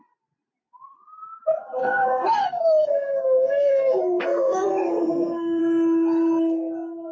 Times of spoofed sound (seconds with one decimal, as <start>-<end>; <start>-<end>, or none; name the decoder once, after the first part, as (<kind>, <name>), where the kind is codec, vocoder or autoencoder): 1.8-5.6 (codec, SNAC)